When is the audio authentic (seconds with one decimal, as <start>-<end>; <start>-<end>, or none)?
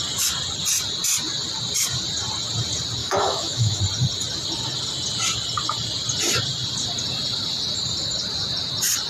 0.0-3.0; 3.8-9.1